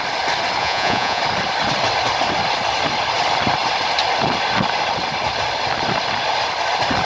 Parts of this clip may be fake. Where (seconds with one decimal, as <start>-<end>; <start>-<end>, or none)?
0.6-1.2